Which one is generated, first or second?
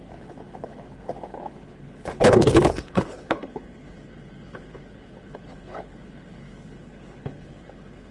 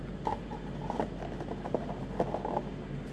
first